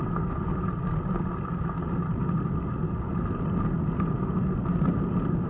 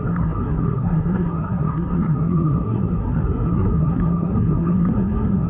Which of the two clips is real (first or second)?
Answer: first